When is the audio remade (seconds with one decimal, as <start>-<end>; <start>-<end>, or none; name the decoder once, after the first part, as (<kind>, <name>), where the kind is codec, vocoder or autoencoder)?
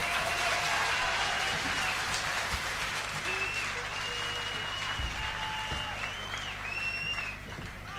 0.0-3.3 (vocoder, BigVGAN v2)